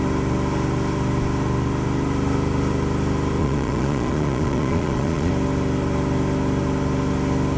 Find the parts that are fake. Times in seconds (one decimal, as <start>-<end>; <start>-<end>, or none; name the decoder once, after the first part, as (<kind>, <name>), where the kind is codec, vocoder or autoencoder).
3.4-5.3 (vocoder, Vocos)